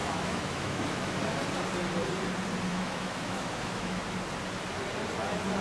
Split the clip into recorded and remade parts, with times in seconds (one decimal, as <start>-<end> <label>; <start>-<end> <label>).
0.0-1.2 remade; 1.2-2.7 recorded; 2.7-4.0 remade; 4.0-5.6 recorded